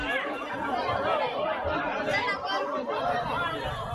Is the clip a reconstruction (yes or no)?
no